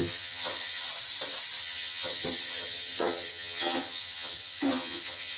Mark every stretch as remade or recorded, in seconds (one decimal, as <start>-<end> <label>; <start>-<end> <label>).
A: 0.0-0.9 remade; 0.9-1.6 recorded; 1.6-5.4 remade